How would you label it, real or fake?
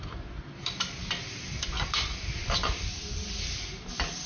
real